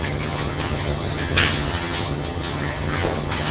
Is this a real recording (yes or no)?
no